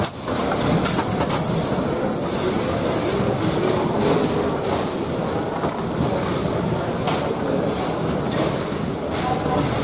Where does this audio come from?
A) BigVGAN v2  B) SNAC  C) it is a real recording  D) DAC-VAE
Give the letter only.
C